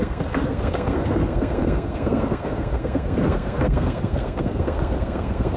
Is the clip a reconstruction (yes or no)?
yes